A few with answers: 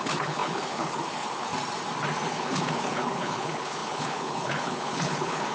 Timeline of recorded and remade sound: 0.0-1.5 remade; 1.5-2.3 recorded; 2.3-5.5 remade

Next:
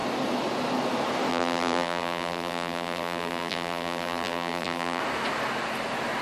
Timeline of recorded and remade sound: 0.0-1.3 recorded; 1.3-5.0 remade; 5.0-6.2 recorded